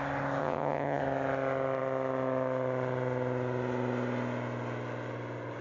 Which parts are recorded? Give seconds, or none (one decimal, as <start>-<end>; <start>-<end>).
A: 0.0-0.4; 1.0-5.6